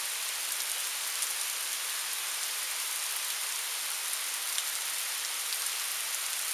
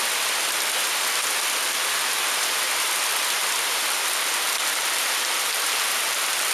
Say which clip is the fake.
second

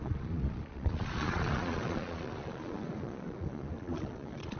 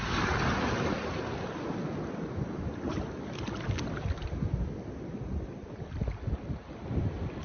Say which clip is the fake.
first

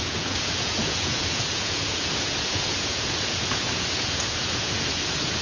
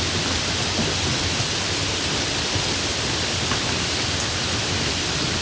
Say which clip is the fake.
first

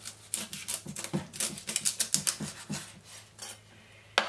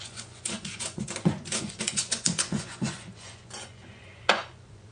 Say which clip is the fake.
second